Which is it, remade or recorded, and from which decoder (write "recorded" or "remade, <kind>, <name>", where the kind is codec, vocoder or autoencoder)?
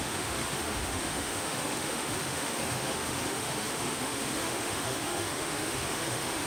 remade, autoencoder, DAC-VAE